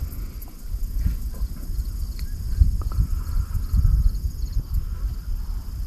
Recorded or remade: recorded